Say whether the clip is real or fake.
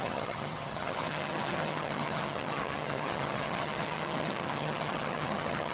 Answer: fake